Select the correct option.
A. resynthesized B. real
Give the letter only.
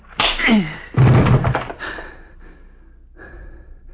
B